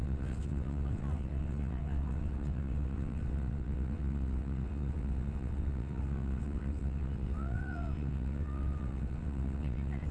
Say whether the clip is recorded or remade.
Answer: remade